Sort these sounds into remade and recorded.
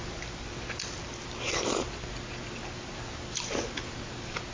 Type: recorded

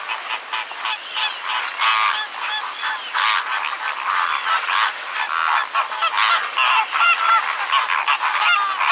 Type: recorded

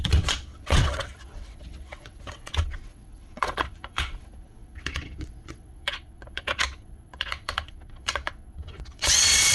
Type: remade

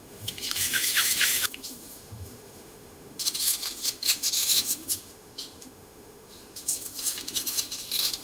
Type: remade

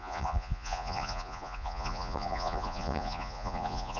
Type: remade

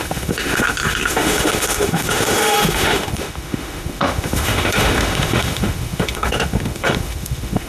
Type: remade